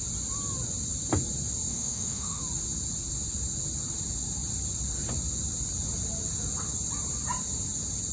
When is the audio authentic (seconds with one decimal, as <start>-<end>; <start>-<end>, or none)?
0.0-1.7; 2.4-8.1